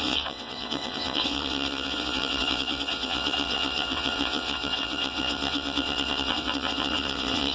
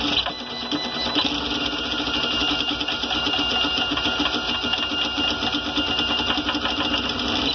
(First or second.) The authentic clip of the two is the second